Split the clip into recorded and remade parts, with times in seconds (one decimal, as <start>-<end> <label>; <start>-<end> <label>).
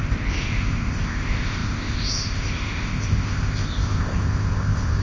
0.0-5.0 remade